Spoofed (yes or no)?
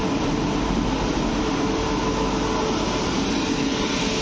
no